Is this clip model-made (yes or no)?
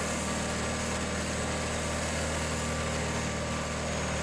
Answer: no